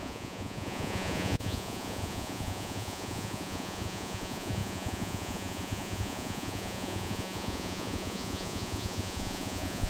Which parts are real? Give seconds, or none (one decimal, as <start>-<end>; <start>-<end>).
none

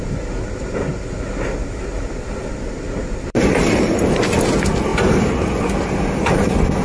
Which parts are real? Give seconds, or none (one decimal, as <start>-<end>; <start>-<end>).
0.0-1.9; 3.7-4.9; 5.8-6.8

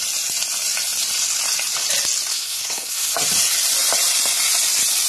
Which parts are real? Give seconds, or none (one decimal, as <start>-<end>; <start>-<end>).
0.0-2.3; 3.1-5.1

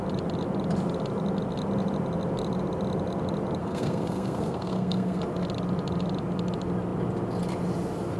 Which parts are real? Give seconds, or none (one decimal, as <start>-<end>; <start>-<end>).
0.0-3.6; 5.2-8.2

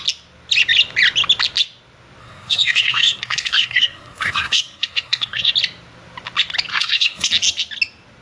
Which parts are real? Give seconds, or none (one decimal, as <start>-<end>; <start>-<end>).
0.0-2.2; 5.5-6.7; 7.3-8.2

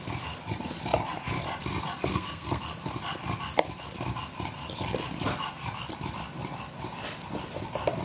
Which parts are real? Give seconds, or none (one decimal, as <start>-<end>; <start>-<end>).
0.0-2.1; 2.6-8.0

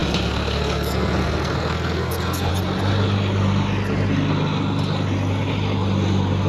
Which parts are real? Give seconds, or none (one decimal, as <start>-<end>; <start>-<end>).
2.5-6.5

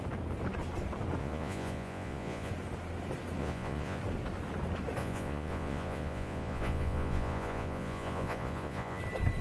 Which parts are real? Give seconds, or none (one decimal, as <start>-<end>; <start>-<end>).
0.0-1.2; 2.5-3.4; 4.0-5.0; 9.0-9.4